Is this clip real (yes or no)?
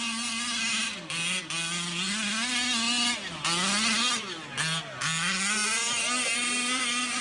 yes